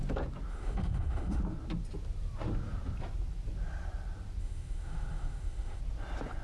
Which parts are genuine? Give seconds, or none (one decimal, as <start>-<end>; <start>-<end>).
0.0-0.5; 1.4-4.4; 5.8-6.4